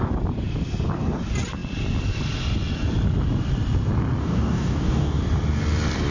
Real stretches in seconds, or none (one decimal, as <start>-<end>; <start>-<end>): 0.0-4.2; 5.2-6.1